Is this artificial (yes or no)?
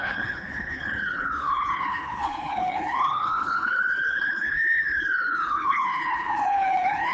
yes